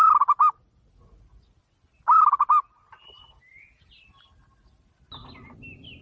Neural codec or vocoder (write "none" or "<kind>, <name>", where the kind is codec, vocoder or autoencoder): none